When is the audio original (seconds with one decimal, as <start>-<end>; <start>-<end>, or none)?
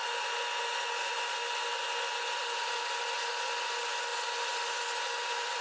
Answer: 0.0-5.6